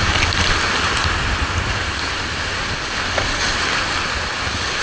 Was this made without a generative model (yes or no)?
yes